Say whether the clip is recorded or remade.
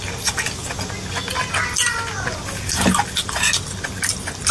recorded